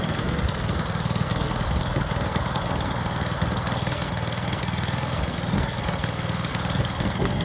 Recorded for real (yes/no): no